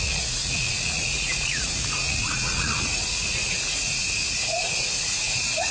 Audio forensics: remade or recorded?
remade